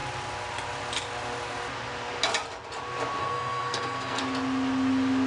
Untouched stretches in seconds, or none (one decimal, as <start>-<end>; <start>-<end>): 0.0-3.2; 4.2-5.3